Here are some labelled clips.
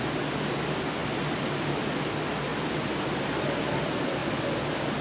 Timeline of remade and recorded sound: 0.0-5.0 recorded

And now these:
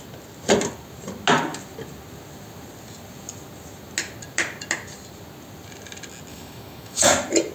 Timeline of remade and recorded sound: 0.0-6.3 recorded; 6.3-7.1 remade; 7.1-7.5 recorded

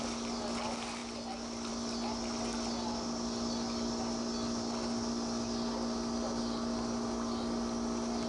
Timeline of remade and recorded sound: 0.0-8.3 recorded

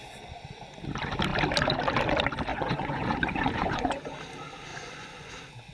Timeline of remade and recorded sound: 0.0-2.5 recorded; 2.5-4.1 remade; 4.1-4.7 recorded; 4.7-5.3 remade; 5.3-5.7 recorded